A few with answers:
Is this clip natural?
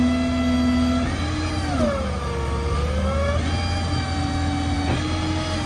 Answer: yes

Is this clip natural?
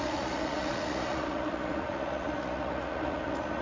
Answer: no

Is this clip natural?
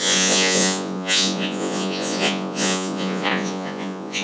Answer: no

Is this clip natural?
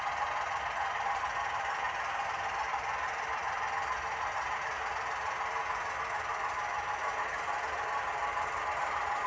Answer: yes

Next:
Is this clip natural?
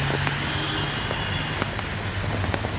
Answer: yes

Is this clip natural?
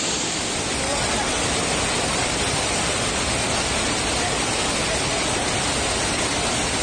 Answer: yes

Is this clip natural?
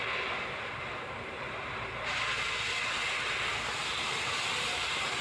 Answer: yes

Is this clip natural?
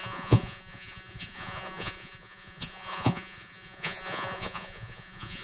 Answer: no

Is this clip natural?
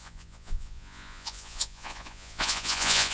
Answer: no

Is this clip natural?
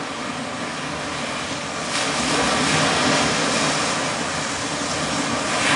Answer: yes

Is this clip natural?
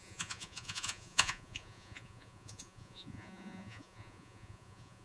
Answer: no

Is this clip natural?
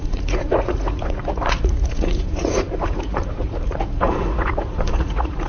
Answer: no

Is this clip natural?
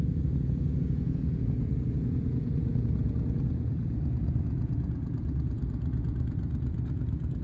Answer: no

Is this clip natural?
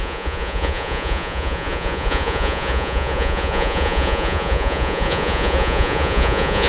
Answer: no